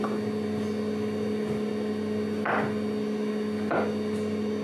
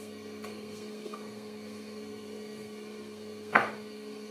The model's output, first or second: second